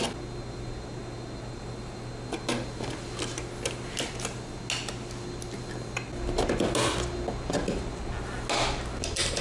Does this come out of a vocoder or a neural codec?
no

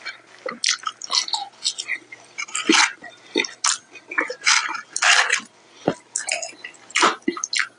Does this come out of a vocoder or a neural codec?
no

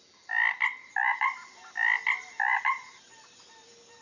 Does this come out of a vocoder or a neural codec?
no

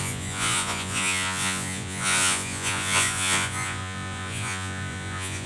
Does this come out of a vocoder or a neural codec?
yes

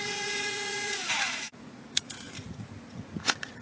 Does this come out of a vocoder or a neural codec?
yes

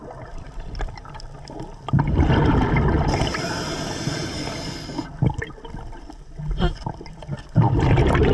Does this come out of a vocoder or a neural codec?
no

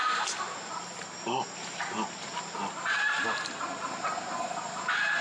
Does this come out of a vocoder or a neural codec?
no